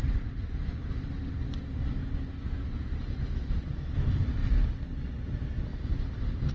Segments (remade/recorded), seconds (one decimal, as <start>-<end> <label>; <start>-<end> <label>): 0.0-2.0 remade; 2.0-3.0 recorded; 3.0-4.4 remade; 4.4-5.1 recorded; 5.1-6.5 remade